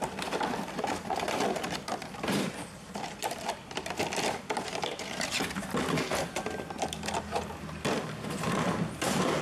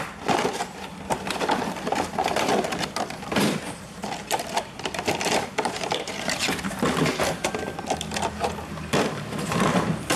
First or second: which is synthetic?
second